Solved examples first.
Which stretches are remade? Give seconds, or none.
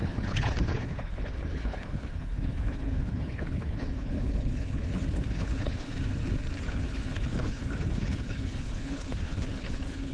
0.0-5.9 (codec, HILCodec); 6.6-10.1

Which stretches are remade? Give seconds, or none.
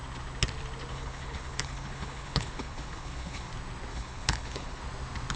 0.9-3.5 (codec, HILCodec); 3.9-4.8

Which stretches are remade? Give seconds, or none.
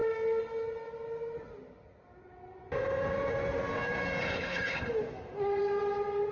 4.2-4.9 (codec, HILCodec)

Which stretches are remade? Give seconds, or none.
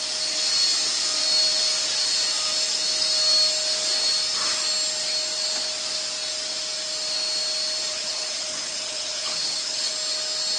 7.9-9.9 (codec, HILCodec)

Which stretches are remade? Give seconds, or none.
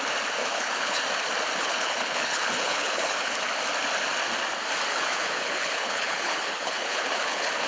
0.4-1.0 (codec, HILCodec); 1.6-3.5; 4.9-7.7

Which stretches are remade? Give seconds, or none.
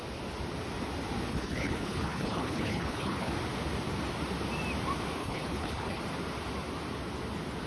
1.3-3.3 (codec, HILCodec); 5.2-6.0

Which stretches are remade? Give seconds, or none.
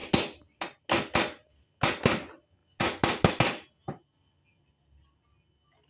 none